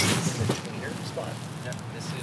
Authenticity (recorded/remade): recorded